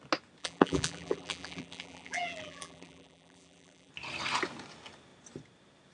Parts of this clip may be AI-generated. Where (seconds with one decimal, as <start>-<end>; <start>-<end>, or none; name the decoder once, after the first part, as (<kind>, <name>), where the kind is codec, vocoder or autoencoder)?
0.4-3.9 (vocoder, BigVGAN v2)